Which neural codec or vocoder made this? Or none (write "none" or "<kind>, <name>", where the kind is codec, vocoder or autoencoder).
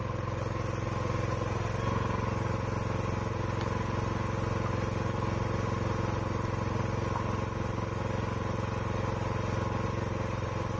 none